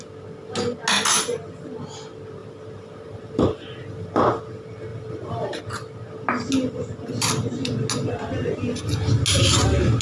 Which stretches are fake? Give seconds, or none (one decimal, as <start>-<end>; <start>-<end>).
2.4-4.4; 4.9-5.6

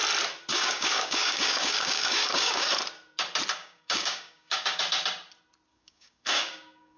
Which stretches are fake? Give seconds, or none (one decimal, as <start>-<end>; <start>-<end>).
0.5-2.7; 3.6-4.8; 5.7-7.0